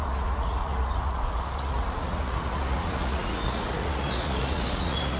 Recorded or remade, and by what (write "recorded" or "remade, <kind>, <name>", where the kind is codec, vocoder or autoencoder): remade, vocoder, Vocos